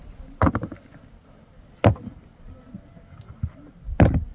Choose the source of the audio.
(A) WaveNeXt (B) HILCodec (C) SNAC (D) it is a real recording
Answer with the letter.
D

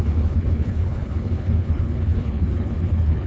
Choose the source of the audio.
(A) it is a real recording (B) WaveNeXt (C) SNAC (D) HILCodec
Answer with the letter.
D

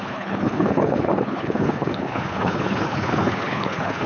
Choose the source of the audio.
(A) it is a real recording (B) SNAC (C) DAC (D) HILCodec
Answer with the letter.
D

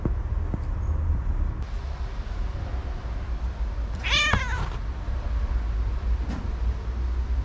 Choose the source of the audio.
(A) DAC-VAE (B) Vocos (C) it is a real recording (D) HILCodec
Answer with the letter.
C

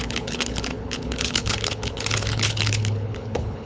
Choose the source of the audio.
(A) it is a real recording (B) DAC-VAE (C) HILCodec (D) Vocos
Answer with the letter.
C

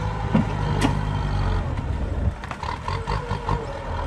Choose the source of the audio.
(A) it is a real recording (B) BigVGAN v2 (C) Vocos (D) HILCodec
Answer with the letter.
A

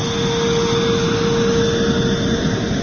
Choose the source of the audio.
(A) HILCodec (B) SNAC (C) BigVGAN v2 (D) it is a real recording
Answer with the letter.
D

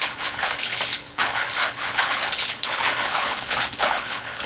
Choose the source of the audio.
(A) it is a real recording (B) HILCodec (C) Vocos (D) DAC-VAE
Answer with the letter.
B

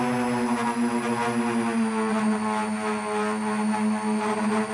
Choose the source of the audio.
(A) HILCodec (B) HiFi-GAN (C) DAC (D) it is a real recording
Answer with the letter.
D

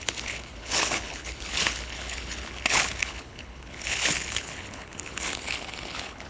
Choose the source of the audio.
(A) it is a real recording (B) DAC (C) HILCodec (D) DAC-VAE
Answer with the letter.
C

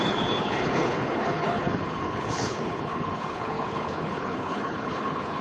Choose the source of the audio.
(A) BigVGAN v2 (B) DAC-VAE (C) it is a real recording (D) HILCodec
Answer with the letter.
D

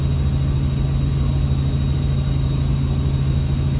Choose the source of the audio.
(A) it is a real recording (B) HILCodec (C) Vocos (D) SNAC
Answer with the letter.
A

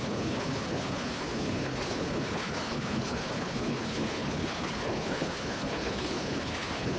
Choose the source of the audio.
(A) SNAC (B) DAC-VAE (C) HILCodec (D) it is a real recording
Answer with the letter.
C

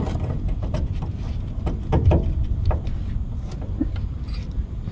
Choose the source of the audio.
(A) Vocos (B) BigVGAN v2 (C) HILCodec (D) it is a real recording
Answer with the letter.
D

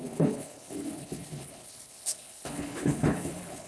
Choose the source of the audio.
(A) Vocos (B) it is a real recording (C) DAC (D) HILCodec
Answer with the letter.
D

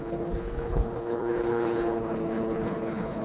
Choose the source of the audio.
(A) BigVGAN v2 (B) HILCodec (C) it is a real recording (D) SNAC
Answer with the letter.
B